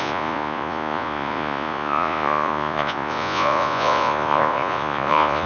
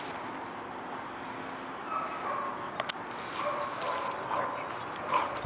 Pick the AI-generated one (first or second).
first